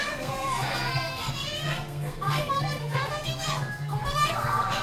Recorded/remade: remade